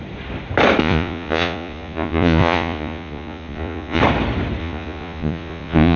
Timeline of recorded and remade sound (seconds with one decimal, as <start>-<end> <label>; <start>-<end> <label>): 0.0-0.8 recorded; 0.8-4.0 remade; 4.0-4.6 recorded; 4.6-6.0 remade